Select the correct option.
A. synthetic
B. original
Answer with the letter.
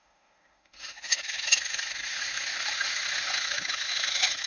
A